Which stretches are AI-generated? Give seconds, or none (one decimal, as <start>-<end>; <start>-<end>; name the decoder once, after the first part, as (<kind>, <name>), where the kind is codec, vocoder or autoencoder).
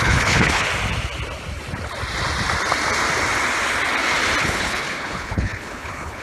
0.0-0.7 (codec, HILCodec); 4.4-6.2